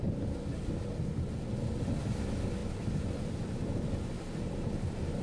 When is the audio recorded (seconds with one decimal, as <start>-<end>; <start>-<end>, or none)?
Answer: 0.0-5.2